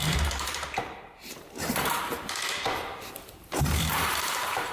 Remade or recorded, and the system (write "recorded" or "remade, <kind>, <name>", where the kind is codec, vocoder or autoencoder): remade, vocoder, BigVGAN v2